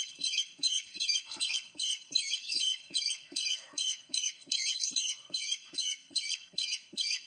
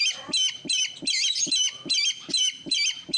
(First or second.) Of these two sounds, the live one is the second